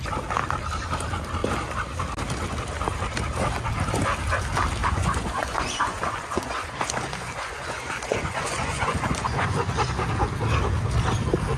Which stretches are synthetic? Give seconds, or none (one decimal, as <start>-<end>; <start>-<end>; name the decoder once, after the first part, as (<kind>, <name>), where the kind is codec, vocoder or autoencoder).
4.8-9.8 (vocoder, Vocos)